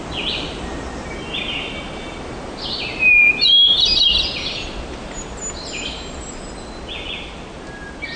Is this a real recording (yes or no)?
yes